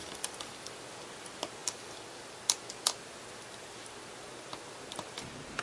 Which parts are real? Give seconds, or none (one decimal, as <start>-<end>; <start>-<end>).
0.9-1.6; 2.4-5.6